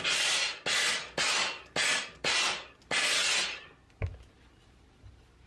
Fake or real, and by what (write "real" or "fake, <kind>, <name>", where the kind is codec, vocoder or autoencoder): real